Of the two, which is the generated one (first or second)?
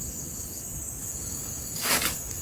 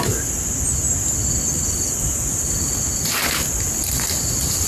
first